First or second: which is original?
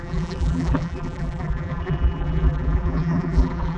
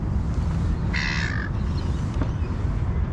second